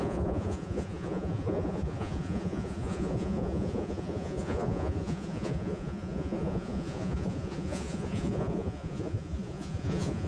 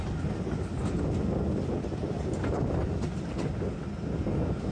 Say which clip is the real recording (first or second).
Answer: second